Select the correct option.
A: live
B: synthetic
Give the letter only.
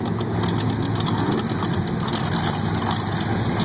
A